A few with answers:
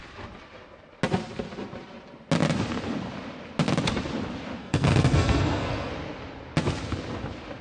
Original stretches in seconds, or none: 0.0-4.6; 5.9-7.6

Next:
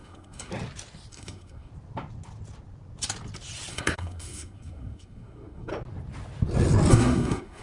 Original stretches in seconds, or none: 0.5-1.1; 1.7-3.7; 5.7-6.9

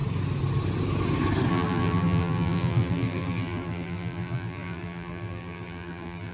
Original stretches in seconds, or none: 0.0-1.5

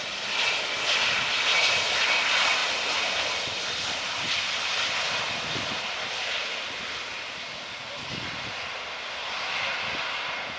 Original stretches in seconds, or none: 0.0-2.6; 5.4-10.6

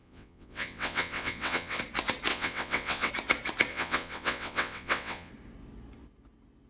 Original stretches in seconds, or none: 1.8-2.3; 3.1-3.7; 5.3-6.7

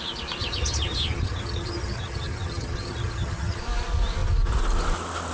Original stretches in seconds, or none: 0.0-0.4; 3.6-5.3

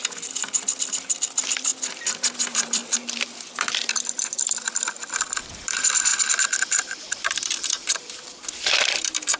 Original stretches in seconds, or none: 1.7-2.4; 2.8-3.5; 6.1-7.0